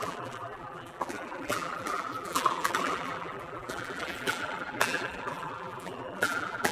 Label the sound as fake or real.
fake